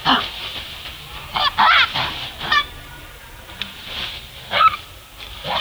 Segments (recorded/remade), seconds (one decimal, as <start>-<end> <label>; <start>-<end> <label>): 0.0-5.6 remade